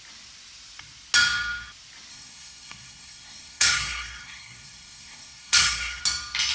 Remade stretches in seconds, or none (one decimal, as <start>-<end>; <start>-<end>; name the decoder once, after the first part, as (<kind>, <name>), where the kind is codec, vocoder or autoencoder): 2.1-6.0 (codec, SNAC)